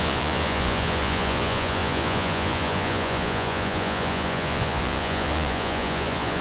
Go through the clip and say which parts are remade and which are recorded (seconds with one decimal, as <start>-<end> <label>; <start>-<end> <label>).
0.0-6.4 remade